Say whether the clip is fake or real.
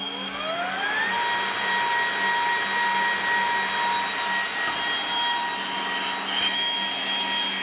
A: real